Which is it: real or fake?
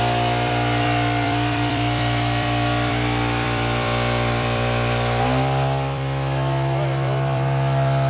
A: fake